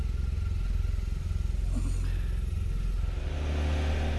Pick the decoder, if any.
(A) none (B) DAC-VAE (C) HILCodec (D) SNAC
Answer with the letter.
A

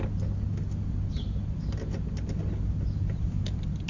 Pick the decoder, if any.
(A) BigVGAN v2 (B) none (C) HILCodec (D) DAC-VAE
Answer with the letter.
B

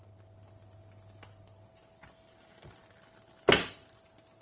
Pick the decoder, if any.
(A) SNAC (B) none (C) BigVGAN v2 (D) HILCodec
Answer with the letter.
B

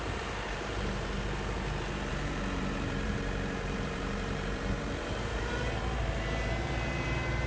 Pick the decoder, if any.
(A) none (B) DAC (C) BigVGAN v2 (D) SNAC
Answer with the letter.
C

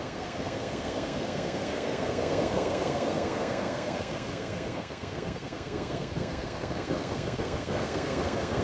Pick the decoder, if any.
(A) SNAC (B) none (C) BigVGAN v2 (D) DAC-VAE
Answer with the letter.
A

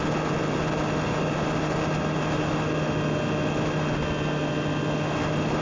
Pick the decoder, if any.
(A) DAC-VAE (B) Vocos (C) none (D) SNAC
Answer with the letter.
C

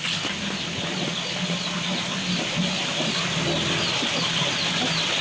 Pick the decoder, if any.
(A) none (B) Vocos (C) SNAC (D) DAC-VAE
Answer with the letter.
A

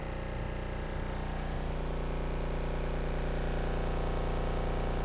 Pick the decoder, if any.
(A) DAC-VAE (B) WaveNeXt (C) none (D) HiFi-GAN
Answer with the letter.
C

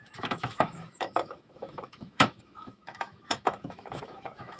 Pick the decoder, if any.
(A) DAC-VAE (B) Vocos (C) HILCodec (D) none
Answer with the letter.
A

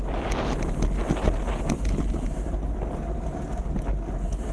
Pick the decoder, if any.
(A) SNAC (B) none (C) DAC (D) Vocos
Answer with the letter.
B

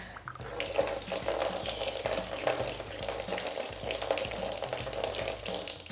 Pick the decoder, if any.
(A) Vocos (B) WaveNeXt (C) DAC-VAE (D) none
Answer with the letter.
D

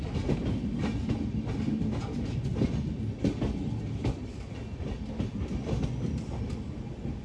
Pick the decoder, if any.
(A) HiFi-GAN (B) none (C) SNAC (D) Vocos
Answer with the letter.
B